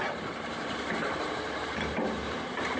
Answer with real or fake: fake